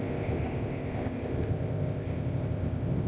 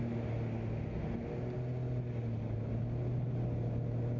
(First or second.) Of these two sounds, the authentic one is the second